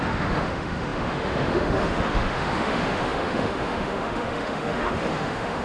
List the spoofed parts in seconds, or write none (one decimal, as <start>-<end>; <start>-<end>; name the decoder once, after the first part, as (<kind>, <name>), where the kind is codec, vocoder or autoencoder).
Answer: 0.0-5.6 (autoencoder, DAC-VAE)